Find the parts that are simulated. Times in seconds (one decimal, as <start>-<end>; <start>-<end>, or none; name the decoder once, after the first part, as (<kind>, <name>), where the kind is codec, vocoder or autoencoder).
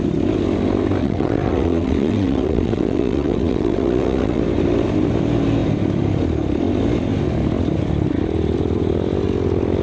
1.0-4.4 (vocoder, WaveNeXt)